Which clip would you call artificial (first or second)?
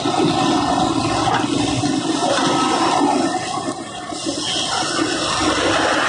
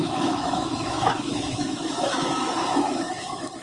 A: second